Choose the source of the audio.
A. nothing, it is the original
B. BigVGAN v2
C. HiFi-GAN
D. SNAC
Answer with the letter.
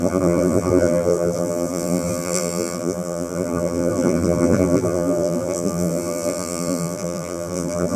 B